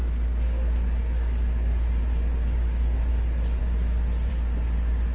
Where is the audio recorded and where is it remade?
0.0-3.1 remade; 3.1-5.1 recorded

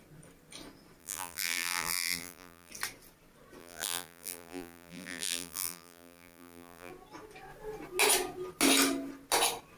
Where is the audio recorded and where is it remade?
0.0-1.0 recorded; 1.0-2.7 remade; 2.7-3.6 recorded; 3.6-6.9 remade; 6.9-9.8 recorded

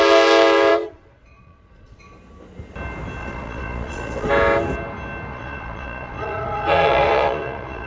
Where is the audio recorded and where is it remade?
0.0-0.7 recorded; 0.7-2.0 remade; 2.0-3.2 recorded; 3.2-4.3 remade; 4.3-5.3 recorded; 5.3-7.9 remade

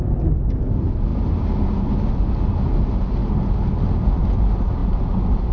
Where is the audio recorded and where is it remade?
0.0-5.5 recorded

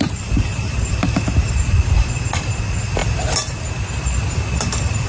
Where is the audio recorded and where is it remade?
0.0-5.1 recorded